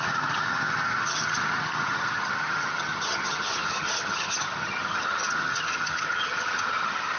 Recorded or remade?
remade